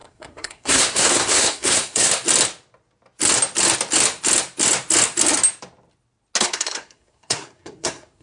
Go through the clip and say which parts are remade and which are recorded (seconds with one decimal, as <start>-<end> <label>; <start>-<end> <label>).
0.0-2.1 remade; 2.1-6.4 recorded; 6.4-8.2 remade

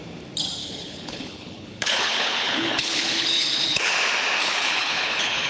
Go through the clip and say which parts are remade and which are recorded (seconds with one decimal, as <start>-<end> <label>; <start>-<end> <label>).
0.0-0.6 recorded; 0.6-3.9 remade; 3.9-4.4 recorded; 4.4-5.5 remade

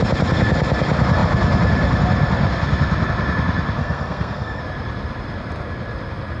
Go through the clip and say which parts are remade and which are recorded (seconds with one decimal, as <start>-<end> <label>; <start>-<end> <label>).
0.0-3.8 recorded; 3.8-4.6 remade; 4.6-6.4 recorded

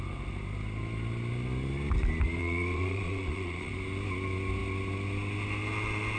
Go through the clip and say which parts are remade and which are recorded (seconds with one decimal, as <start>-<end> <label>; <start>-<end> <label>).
0.0-2.4 recorded; 2.4-3.7 remade; 3.7-6.2 recorded

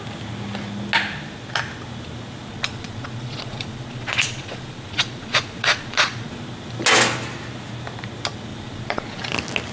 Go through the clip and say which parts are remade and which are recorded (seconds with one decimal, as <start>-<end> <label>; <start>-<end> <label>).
0.0-2.5 recorded; 2.5-6.3 remade; 6.3-8.5 recorded; 8.5-9.2 remade; 9.2-9.7 recorded